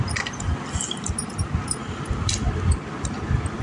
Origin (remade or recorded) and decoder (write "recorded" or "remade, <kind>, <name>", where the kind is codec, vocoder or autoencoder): recorded